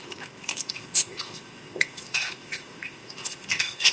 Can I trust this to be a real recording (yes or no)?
no